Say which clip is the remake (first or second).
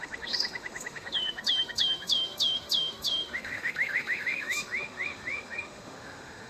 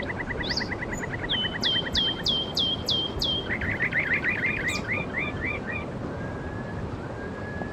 first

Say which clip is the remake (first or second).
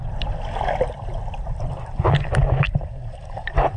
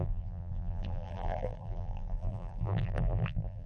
second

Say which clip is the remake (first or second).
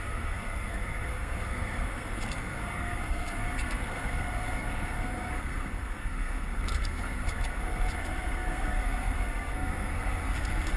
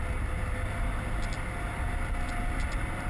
first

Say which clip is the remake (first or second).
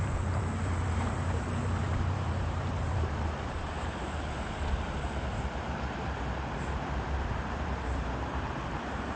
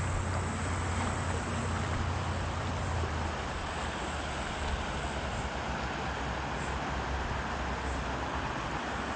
first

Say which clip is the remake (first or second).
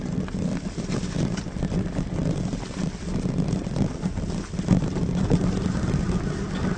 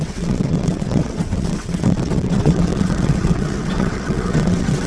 second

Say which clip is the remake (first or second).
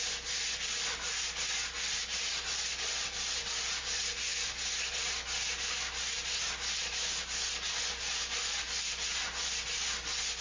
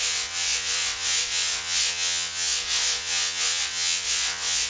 second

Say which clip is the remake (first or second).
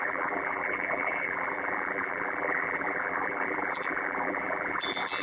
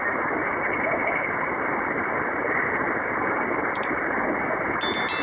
first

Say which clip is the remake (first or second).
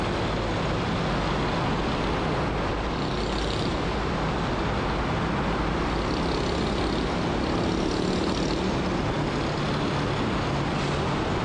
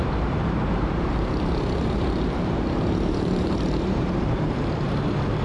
second